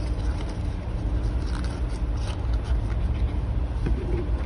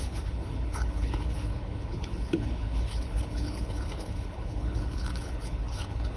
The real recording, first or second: first